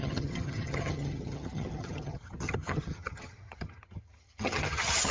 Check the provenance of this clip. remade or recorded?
remade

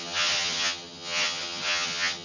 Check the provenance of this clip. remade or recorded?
remade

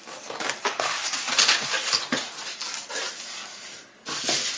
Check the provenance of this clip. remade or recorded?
recorded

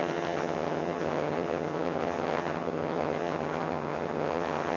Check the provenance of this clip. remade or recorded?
remade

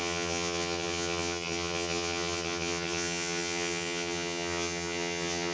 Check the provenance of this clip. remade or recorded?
remade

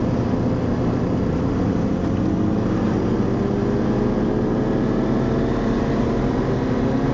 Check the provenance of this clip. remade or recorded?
recorded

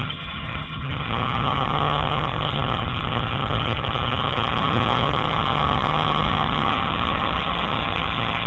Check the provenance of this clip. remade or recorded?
remade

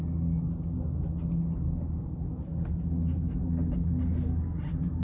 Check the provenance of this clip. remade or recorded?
recorded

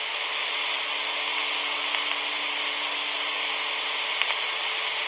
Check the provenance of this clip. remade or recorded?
recorded